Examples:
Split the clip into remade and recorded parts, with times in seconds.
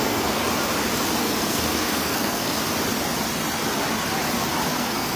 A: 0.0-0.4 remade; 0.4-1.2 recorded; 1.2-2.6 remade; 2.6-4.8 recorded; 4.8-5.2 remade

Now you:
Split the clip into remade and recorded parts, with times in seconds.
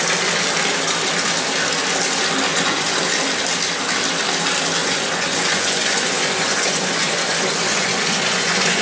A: 0.0-2.5 recorded; 2.5-3.0 remade; 3.0-4.8 recorded; 4.8-8.8 remade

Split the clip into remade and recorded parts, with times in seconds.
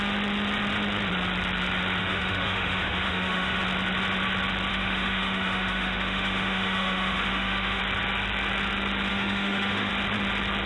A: 0.0-2.0 recorded; 2.0-3.6 remade; 3.6-4.7 recorded; 4.7-7.8 remade; 7.8-9.1 recorded; 9.1-9.9 remade; 9.9-10.7 recorded